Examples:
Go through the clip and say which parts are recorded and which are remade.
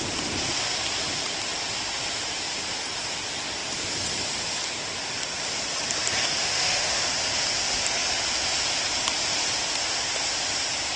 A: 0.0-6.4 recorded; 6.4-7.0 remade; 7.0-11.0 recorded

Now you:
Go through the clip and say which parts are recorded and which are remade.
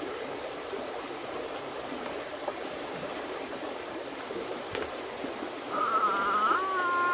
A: 0.0-1.2 recorded; 1.2-5.3 remade; 5.3-7.1 recorded